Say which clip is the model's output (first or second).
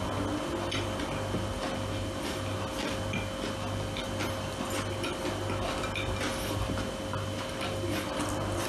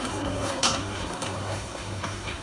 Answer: second